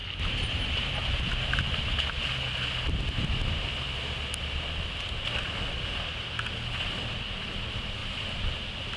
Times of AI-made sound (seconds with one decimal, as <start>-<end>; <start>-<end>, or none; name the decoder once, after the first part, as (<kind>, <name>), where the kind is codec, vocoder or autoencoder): 0.0-0.9 (vocoder, BigVGAN v2); 8.0-8.6